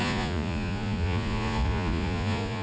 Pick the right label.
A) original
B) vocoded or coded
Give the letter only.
B